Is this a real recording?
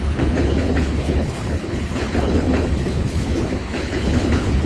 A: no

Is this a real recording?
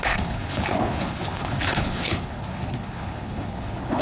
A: no